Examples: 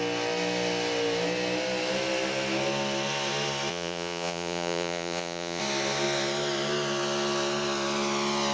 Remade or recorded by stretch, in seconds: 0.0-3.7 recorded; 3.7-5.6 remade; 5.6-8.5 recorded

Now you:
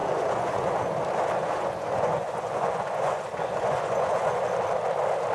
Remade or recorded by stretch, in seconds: 0.0-0.8 remade; 0.8-1.4 recorded; 1.4-4.4 remade; 4.4-5.3 recorded

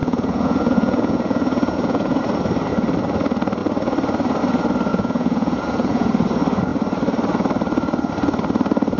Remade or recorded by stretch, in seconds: 0.0-2.2 remade; 2.2-4.9 recorded; 4.9-6.1 remade; 6.1-9.0 recorded

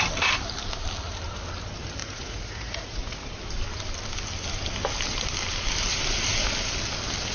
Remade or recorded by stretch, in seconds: 0.0-2.0 recorded; 2.0-3.3 remade; 3.3-7.3 recorded

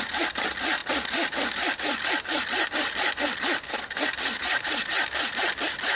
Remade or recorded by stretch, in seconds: 0.0-6.0 recorded